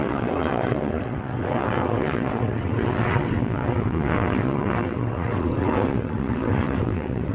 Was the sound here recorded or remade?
remade